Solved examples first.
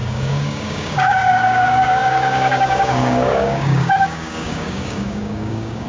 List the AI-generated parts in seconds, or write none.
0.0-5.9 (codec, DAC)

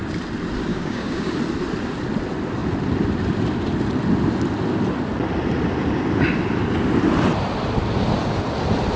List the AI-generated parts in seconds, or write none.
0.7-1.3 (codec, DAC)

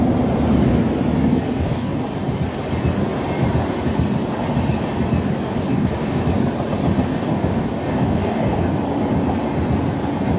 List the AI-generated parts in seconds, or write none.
1.3-2.0 (codec, DAC); 5.7-6.2; 7.1-8.6

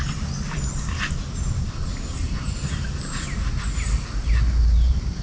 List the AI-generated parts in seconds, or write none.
none